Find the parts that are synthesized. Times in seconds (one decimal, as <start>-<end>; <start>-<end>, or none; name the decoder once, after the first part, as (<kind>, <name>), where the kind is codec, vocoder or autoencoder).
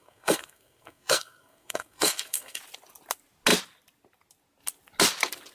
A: 0.0-2.6 (codec, SNAC)